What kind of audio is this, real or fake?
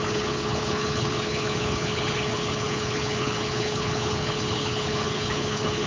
fake